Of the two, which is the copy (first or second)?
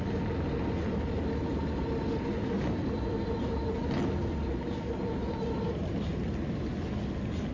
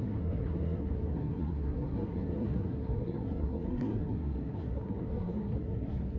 second